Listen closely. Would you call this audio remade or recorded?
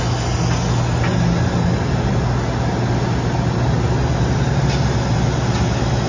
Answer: recorded